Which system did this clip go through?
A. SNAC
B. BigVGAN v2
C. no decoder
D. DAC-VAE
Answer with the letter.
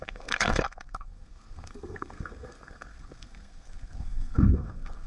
A